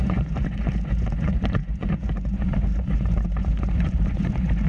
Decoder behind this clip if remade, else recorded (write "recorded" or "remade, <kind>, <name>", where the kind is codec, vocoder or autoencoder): remade, vocoder, Vocos